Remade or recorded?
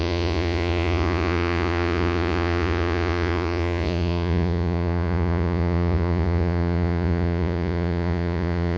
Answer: remade